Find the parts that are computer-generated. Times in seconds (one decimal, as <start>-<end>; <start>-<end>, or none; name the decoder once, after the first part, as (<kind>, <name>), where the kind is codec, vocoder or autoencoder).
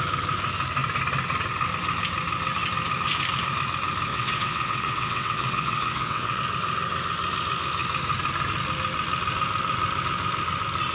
4.1-6.4 (vocoder, WaveNeXt)